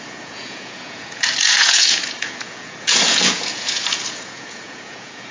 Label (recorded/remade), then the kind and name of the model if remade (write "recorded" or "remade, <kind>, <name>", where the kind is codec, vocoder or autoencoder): remade, vocoder, Vocos